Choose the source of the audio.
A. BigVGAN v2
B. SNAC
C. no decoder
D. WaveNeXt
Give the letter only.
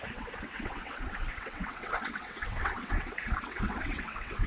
D